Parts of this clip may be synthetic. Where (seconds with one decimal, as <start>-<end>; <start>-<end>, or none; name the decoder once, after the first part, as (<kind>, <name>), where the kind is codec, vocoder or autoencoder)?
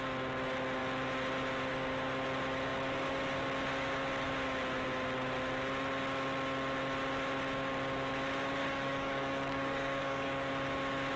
8.6-10.5 (codec, DAC)